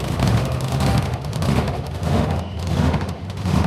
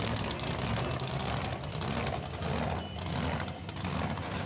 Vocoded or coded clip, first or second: first